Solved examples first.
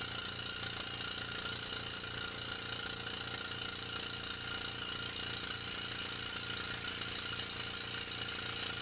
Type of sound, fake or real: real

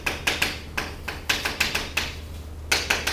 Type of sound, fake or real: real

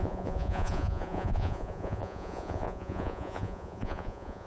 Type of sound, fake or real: fake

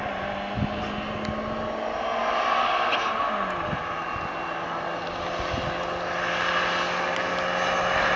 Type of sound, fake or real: real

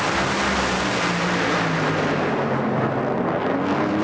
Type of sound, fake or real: real